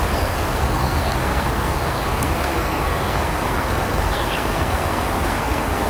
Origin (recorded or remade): remade